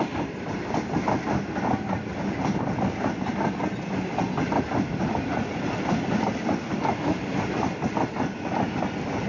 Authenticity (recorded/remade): recorded